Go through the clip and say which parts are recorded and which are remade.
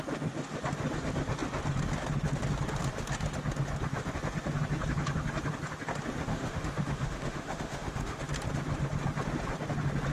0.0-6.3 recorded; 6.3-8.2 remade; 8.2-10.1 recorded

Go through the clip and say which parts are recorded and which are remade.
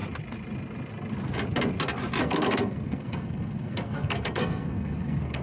0.0-2.2 recorded; 2.2-5.4 remade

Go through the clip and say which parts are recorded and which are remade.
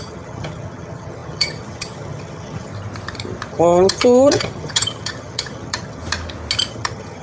0.0-2.7 remade; 2.7-3.5 recorded; 3.5-6.0 remade; 6.0-6.7 recorded; 6.7-7.2 remade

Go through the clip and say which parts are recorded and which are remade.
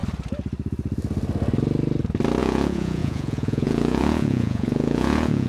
0.0-2.4 recorded; 2.4-5.5 remade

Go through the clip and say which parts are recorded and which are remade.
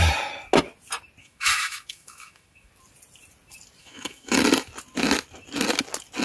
0.0-1.2 recorded; 1.2-2.7 remade; 2.7-3.8 recorded; 3.8-4.4 remade; 4.4-6.2 recorded